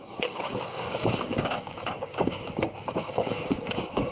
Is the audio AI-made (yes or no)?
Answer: yes